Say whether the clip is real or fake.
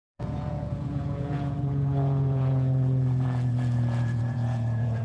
fake